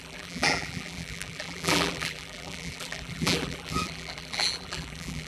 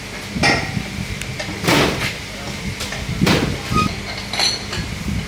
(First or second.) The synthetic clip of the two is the first